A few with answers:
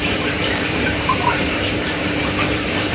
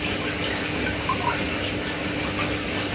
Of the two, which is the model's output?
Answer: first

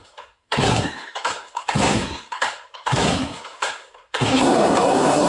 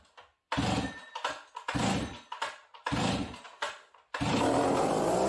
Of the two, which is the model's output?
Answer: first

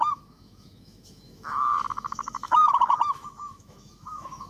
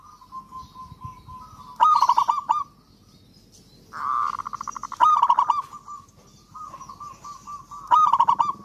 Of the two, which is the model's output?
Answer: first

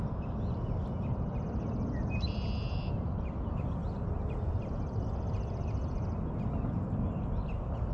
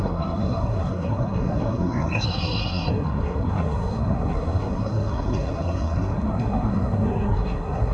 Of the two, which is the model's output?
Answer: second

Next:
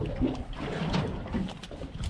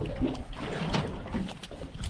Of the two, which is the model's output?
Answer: second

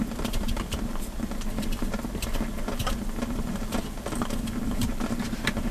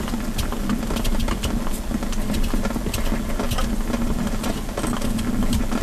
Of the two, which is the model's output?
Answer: first